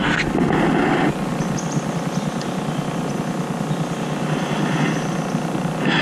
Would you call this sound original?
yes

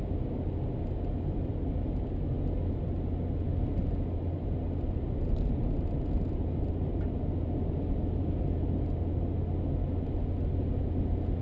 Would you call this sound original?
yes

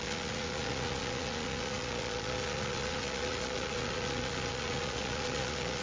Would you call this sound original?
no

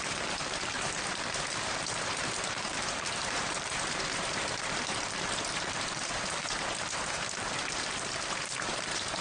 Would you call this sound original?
no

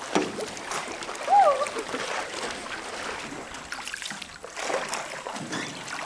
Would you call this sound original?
yes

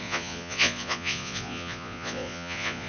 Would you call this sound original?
no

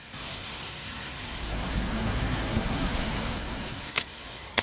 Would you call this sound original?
no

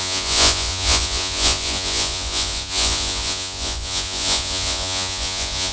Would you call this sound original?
no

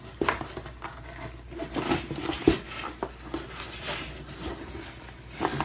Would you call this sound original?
yes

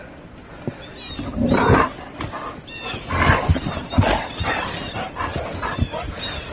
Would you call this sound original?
yes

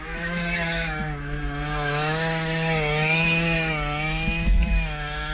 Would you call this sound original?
no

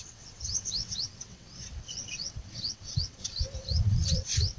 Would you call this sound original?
no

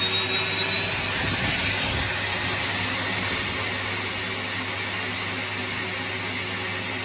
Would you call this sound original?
yes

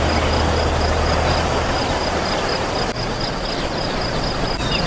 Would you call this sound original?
yes